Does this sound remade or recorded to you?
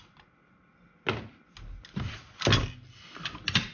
recorded